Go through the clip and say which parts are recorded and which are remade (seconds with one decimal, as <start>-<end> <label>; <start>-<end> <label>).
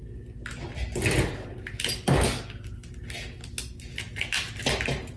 0.0-5.2 recorded